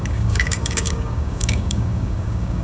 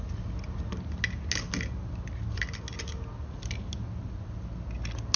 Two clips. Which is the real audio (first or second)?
second